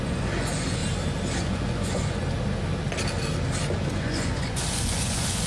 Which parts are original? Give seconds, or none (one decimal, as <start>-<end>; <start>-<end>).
0.8-1.4; 2.2-3.9